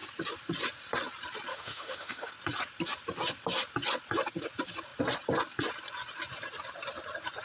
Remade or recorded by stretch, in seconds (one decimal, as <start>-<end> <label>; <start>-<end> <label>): 0.0-1.5 recorded; 1.5-2.3 remade; 2.3-7.4 recorded